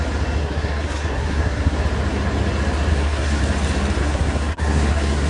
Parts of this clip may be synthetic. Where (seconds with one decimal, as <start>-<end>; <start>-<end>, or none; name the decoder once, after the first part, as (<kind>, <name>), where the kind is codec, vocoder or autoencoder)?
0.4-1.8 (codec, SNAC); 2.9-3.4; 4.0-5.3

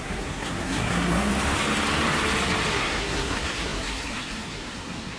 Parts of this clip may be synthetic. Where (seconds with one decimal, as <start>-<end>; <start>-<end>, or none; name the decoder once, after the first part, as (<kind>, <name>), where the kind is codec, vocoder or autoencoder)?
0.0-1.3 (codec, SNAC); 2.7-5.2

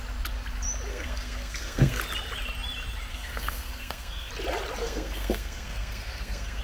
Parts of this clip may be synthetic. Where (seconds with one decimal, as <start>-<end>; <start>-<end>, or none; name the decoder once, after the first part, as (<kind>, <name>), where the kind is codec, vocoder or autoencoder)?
0.9-2.0 (codec, SNAC); 3.1-4.3; 4.8-6.6